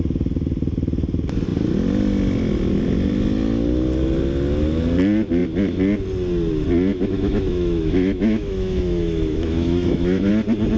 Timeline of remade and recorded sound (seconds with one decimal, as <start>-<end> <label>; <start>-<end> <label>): 0.0-6.9 recorded; 6.9-10.3 remade; 10.3-10.8 recorded